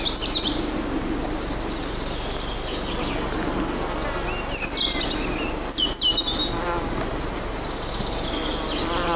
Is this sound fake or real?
real